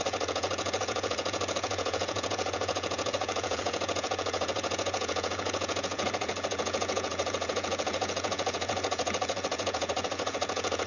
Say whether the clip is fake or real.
fake